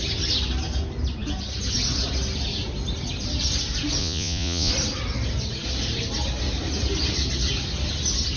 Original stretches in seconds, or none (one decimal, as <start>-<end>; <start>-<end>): 0.0-4.0; 4.7-8.4

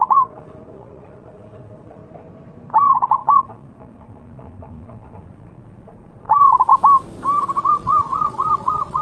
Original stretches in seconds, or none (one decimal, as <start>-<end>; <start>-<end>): 2.0-2.8; 6.7-7.6

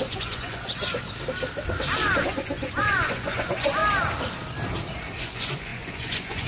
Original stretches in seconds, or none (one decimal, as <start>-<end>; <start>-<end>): 1.0-2.2; 3.8-5.2

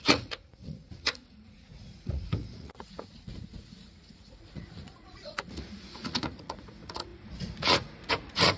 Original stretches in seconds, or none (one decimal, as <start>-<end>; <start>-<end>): none

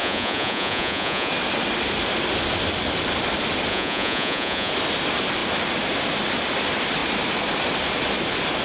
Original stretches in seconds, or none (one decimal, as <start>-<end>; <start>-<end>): 1.3-3.7; 4.7-8.6

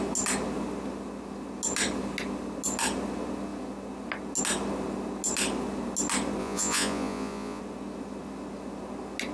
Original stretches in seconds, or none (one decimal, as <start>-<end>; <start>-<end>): 0.0-6.4; 7.6-9.3